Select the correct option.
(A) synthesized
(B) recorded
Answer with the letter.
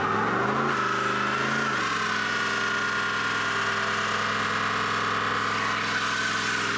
B